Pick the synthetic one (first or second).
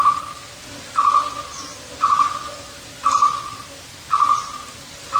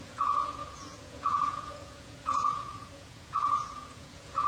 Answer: second